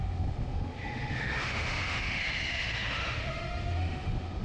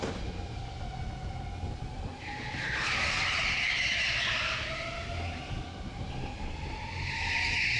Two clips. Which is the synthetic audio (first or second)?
first